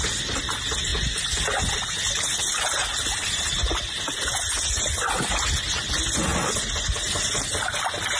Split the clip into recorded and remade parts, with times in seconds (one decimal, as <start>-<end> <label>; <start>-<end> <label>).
0.0-8.2 recorded